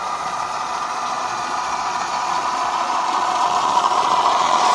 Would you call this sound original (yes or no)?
no